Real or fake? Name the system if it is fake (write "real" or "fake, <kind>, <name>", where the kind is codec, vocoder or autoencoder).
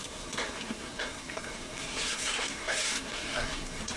fake, codec, SNAC